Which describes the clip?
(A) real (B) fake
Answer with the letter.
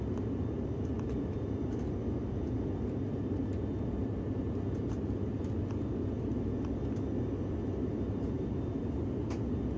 A